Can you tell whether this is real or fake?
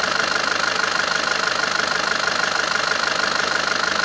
real